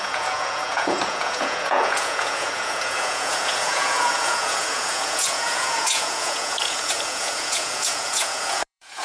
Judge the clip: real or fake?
fake